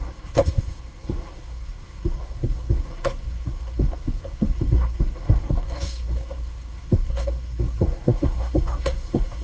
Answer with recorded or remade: remade